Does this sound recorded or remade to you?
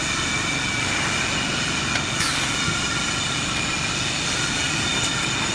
recorded